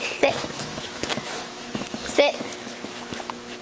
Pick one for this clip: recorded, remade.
remade